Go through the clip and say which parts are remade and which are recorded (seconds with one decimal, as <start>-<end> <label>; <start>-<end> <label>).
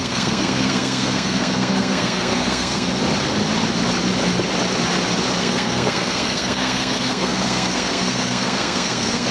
0.0-3.0 remade; 3.0-5.4 recorded; 5.4-9.3 remade